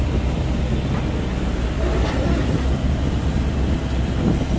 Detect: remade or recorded recorded